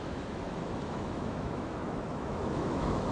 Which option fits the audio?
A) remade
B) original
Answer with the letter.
A